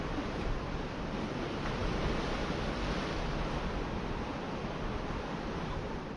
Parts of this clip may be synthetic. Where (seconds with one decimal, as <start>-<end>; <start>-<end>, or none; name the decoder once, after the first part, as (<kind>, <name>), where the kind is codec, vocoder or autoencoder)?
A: 4.3-5.1 (vocoder, BigVGAN v2)